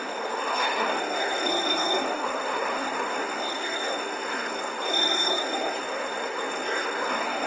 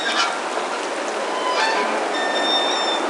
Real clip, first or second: second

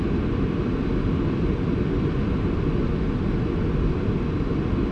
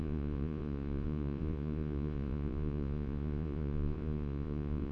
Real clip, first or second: first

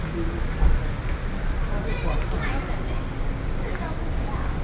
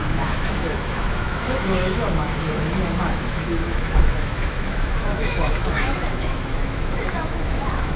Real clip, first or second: first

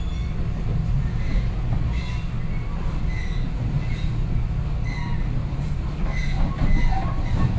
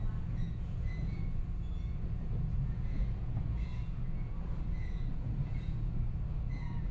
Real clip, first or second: first